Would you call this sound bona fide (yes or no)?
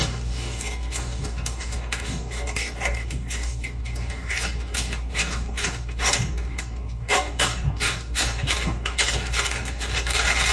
no